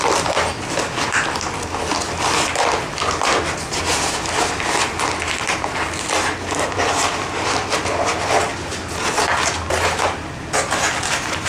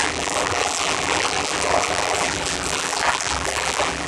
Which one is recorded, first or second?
first